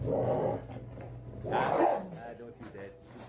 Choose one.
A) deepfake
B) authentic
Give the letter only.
B